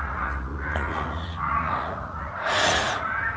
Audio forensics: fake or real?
fake